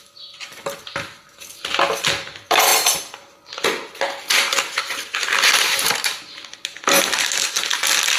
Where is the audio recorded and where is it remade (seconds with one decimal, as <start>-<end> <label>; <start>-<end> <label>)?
0.0-8.2 recorded